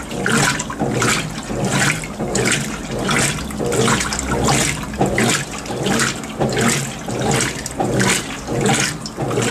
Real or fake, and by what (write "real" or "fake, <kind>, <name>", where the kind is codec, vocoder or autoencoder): real